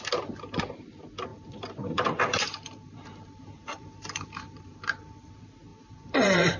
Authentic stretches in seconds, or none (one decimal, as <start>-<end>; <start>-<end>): 0.0-1.3; 5.3-5.7